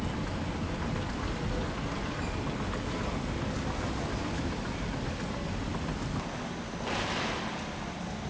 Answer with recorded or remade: recorded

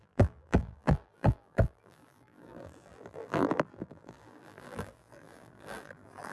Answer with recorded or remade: remade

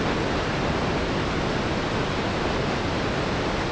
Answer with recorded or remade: recorded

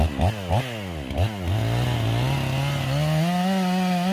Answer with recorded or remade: recorded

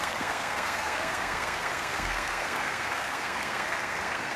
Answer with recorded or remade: remade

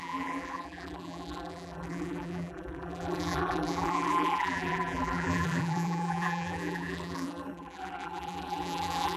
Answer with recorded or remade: remade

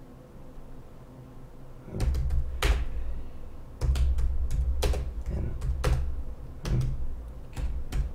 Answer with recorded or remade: recorded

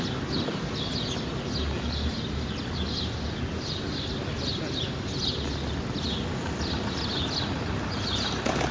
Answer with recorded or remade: recorded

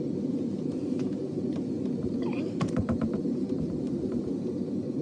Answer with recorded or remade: remade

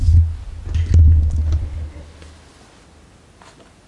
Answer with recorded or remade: recorded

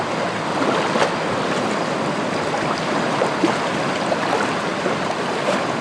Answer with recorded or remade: recorded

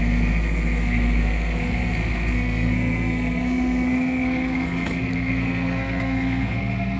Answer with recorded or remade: remade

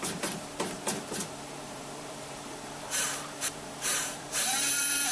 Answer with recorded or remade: remade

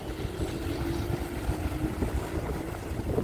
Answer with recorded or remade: recorded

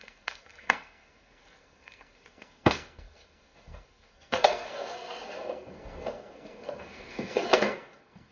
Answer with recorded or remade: remade